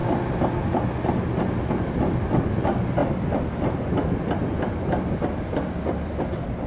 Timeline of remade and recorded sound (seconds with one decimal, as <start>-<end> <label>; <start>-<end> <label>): 0.0-6.7 recorded